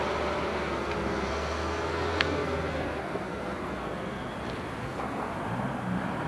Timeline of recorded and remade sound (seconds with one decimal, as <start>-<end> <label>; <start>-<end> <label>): 0.0-0.5 recorded; 0.5-4.3 remade; 4.3-4.8 recorded; 4.8-5.3 remade; 5.3-6.3 recorded